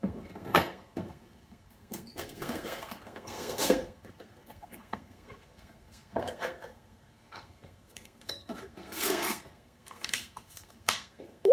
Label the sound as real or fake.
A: fake